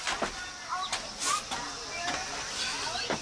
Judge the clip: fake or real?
real